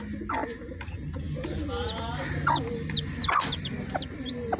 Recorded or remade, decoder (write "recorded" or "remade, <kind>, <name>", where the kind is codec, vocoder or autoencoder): recorded